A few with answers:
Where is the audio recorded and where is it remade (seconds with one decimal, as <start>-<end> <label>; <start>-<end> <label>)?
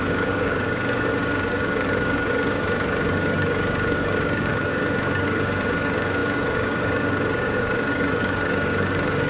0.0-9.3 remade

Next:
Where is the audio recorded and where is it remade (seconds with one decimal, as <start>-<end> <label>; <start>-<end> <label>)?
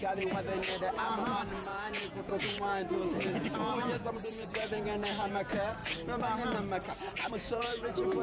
0.0-5.8 remade; 5.8-7.3 recorded; 7.3-8.2 remade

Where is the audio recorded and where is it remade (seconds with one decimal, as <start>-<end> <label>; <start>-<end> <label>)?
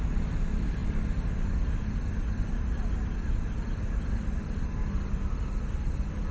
0.0-6.3 recorded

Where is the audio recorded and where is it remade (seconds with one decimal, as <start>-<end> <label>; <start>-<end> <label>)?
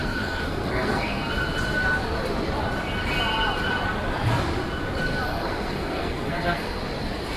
0.0-1.2 remade; 1.2-5.3 recorded; 5.3-6.8 remade; 6.8-7.4 recorded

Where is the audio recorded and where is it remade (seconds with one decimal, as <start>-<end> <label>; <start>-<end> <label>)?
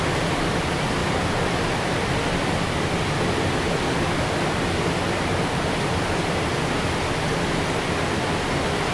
0.0-8.9 recorded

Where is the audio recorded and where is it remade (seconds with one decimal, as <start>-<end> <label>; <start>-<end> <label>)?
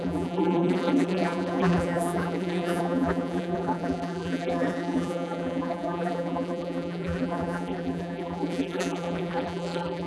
0.0-10.1 remade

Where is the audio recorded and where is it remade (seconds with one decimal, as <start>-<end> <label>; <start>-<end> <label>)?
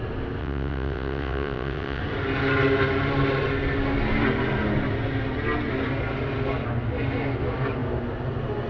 0.0-0.4 recorded; 0.4-2.0 remade; 2.0-8.7 recorded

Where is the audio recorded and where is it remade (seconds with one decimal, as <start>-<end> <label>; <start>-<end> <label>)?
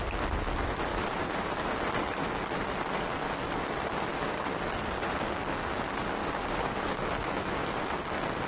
0.0-0.9 recorded; 0.9-2.1 remade; 2.1-6.2 recorded; 6.2-6.9 remade; 6.9-8.5 recorded